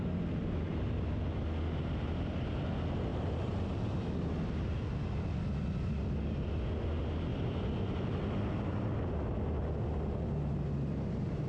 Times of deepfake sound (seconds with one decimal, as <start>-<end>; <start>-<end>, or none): 3.1-4.3; 7.3-8.2